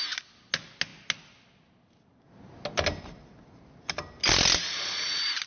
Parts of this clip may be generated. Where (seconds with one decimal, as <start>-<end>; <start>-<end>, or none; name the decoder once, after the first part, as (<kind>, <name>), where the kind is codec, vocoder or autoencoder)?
none